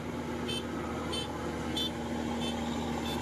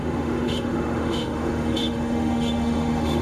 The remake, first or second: second